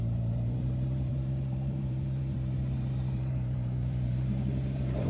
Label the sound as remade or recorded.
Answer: remade